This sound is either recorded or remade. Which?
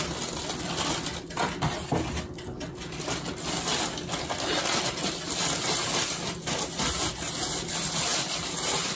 recorded